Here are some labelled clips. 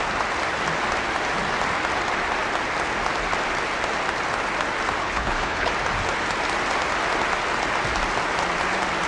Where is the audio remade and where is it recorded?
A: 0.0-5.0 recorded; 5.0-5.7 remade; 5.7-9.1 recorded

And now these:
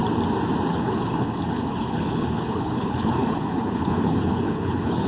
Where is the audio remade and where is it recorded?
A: 0.0-0.7 recorded; 0.7-5.1 remade

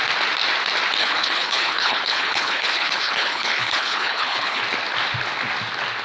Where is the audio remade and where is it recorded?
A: 0.0-1.0 recorded; 1.0-4.6 remade; 4.6-6.0 recorded

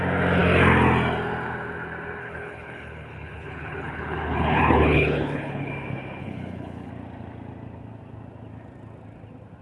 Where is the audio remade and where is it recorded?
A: 0.0-2.2 recorded; 2.2-5.7 remade; 5.7-6.2 recorded; 6.2-6.9 remade; 6.9-9.6 recorded